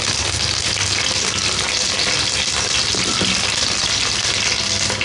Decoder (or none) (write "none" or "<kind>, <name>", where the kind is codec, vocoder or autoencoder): none